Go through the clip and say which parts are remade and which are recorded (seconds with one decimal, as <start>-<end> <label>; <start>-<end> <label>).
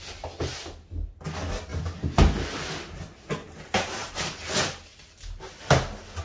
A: 0.0-6.2 recorded